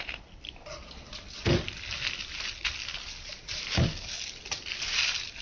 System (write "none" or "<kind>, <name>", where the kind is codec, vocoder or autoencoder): none